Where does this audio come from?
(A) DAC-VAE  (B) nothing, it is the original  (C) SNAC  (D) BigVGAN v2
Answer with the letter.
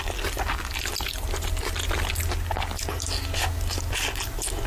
B